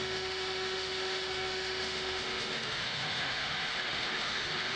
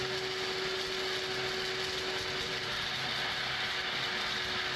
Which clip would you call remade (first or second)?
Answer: first